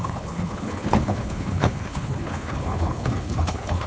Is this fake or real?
fake